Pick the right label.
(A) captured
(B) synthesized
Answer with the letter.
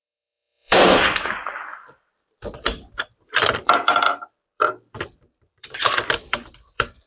B